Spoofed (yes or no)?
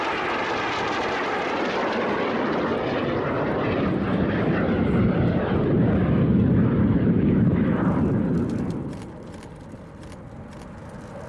no